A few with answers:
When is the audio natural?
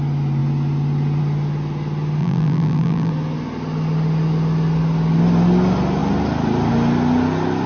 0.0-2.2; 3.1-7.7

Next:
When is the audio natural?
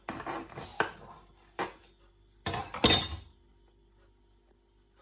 0.0-5.0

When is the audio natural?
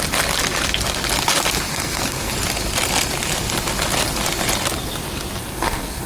0.0-1.7; 2.3-5.4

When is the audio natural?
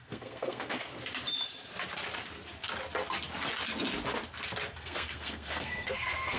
0.9-4.7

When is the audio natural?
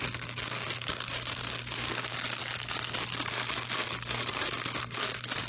2.4-4.3